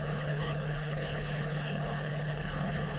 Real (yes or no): no